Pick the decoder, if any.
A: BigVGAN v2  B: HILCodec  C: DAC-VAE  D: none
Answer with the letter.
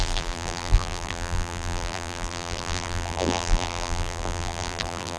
A